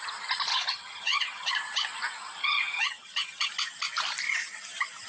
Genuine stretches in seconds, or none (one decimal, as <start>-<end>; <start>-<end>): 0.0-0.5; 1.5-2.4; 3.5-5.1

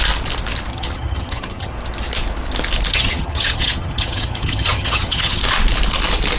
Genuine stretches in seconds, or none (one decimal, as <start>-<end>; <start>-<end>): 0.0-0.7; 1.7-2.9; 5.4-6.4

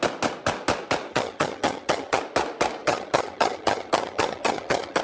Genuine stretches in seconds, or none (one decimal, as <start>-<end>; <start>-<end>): 0.0-1.1; 2.2-2.8

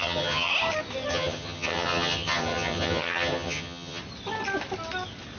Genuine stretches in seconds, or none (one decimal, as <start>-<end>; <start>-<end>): 0.5-1.1; 4.0-5.4

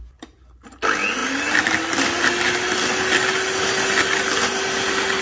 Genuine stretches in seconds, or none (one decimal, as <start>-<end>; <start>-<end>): 0.0-5.2

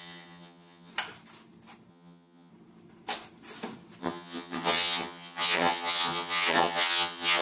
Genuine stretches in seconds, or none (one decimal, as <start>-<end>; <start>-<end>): 0.9-1.9; 2.5-4.0

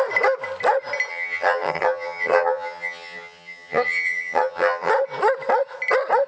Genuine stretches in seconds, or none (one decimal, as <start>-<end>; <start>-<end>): 0.0-1.1; 4.9-6.3